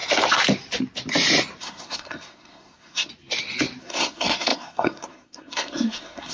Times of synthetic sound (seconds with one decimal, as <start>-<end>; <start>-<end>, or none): 1.6-3.1; 3.8-6.3